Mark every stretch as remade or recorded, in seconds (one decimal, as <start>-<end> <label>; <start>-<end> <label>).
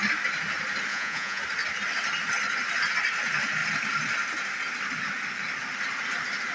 0.0-0.9 recorded; 0.9-1.4 remade; 1.4-6.5 recorded